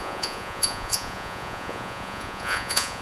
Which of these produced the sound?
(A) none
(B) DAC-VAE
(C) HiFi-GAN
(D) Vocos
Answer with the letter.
D